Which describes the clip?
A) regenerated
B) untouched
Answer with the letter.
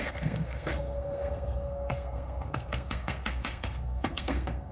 A